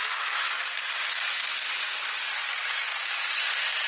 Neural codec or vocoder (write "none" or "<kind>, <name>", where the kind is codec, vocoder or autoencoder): none